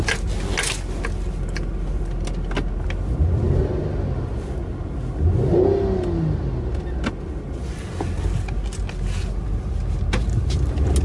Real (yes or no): yes